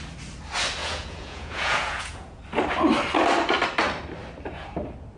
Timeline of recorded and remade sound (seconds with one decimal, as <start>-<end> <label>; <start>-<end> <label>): 0.0-0.8 recorded; 0.8-2.4 remade; 2.4-5.2 recorded